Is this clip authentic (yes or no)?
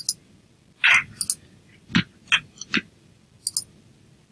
yes